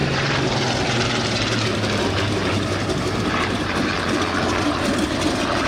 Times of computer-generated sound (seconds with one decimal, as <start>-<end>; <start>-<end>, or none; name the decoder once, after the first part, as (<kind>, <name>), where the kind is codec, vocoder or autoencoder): 0.0-3.9 (vocoder, BigVGAN v2); 4.6-5.7